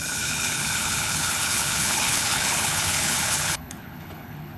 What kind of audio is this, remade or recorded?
remade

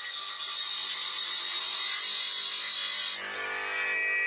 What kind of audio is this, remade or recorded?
recorded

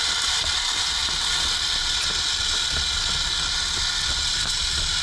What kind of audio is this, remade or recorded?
recorded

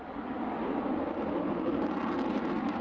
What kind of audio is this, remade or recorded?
recorded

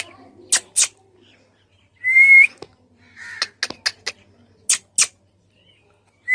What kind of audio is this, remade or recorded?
recorded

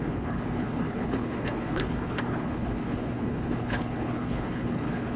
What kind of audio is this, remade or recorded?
remade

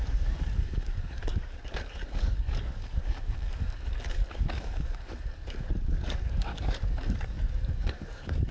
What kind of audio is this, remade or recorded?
remade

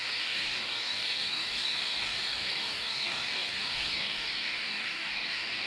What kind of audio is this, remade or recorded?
remade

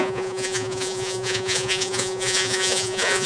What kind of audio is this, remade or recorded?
remade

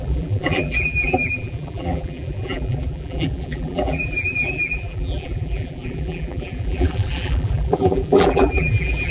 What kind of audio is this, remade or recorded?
remade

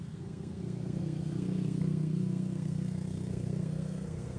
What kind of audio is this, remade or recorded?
remade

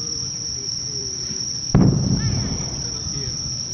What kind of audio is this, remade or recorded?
remade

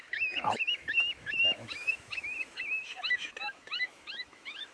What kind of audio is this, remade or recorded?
remade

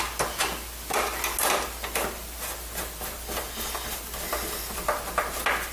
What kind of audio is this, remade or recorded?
recorded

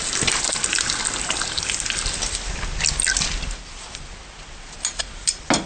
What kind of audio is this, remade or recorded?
recorded